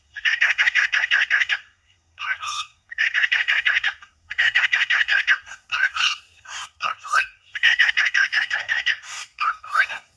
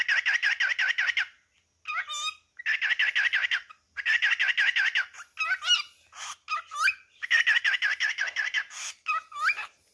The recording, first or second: second